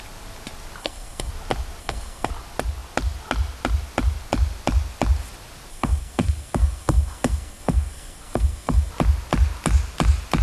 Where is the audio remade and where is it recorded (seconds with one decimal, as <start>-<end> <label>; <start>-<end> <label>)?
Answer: 0.0-0.8 recorded; 0.8-1.3 remade; 1.3-1.8 recorded; 1.8-2.3 remade; 2.3-5.7 recorded; 5.7-8.9 remade; 8.9-10.4 recorded